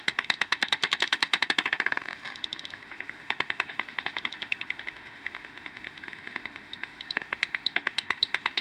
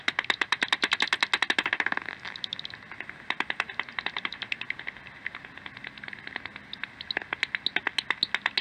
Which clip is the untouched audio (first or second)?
second